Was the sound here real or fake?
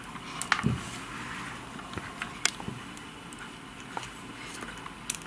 real